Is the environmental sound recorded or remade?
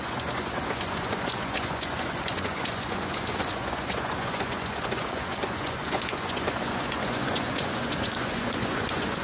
remade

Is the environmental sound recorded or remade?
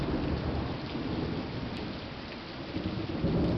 recorded